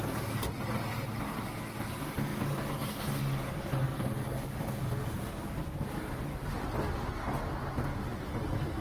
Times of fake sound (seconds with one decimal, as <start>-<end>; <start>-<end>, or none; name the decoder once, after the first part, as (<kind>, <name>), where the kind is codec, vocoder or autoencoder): none